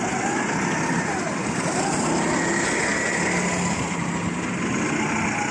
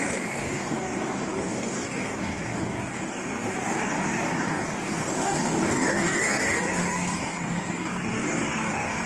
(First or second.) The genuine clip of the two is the first